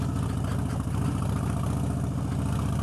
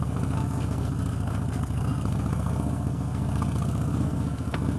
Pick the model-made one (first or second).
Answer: second